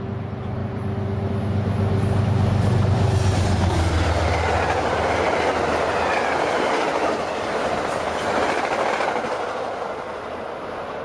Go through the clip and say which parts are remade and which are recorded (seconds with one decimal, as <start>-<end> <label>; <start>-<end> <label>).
0.0-0.6 recorded; 0.6-1.3 remade; 1.3-11.0 recorded